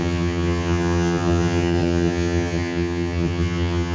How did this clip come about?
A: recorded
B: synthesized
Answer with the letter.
B